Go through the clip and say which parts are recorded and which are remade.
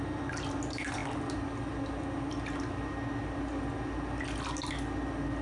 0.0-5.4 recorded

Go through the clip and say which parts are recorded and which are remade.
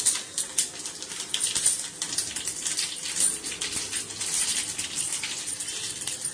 0.0-6.3 recorded